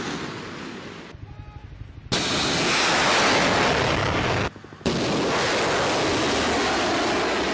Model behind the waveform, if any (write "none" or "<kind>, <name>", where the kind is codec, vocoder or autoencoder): none